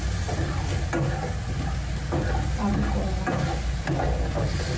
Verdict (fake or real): real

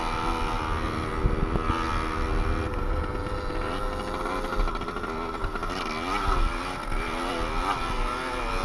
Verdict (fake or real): real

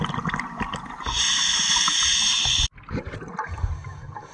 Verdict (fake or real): real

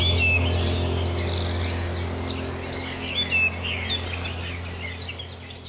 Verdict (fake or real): real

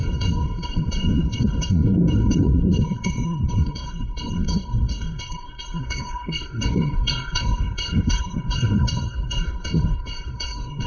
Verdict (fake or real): fake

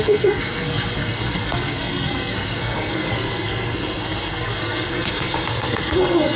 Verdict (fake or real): fake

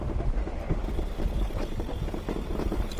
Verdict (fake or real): real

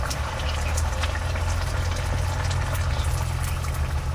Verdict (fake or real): real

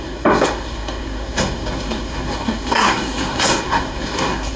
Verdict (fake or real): fake